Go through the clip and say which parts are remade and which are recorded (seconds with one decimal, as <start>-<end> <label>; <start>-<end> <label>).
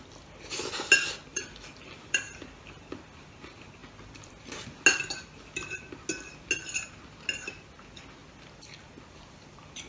0.0-1.3 recorded; 1.3-3.3 remade; 3.3-3.8 recorded; 3.8-4.3 remade; 4.3-8.2 recorded; 8.2-9.9 remade